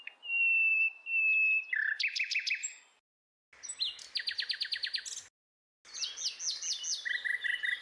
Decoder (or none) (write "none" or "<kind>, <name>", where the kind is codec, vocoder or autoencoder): none